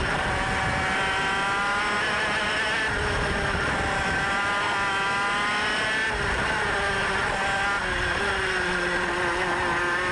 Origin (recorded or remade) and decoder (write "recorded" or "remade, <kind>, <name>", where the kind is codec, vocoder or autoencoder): recorded